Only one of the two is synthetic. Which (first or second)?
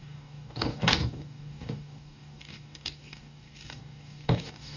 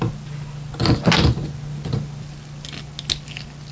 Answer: first